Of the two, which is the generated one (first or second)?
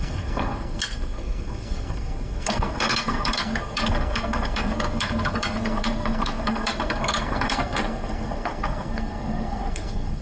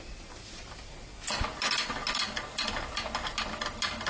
first